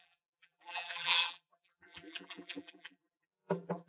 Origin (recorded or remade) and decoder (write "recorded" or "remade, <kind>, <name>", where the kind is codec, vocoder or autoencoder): remade, vocoder, BigVGAN v2